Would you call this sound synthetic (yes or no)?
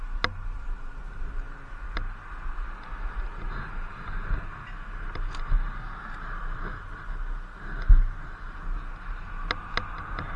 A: no